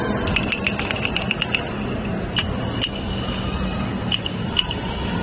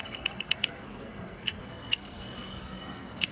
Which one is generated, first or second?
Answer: second